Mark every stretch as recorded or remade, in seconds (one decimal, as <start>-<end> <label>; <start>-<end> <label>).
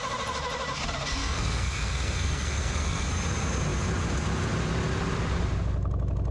0.0-1.2 recorded; 1.2-3.1 remade; 3.1-6.3 recorded